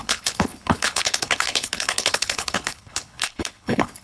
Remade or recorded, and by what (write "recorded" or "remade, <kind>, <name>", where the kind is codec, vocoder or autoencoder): remade, codec, HILCodec